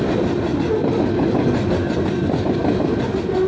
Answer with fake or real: real